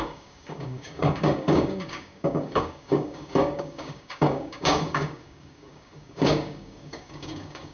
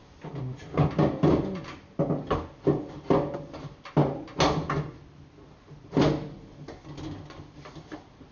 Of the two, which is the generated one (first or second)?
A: first